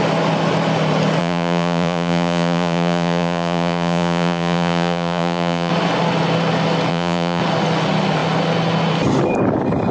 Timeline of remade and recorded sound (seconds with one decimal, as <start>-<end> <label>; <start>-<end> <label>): 0.0-1.2 recorded; 1.2-5.7 remade; 5.7-6.9 recorded; 6.9-7.4 remade; 7.4-9.9 recorded